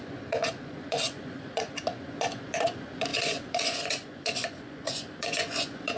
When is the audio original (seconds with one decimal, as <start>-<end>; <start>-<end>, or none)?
none